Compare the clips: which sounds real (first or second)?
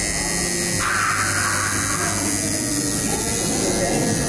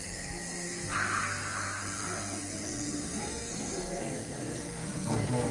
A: first